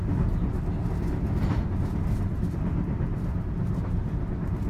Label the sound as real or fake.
real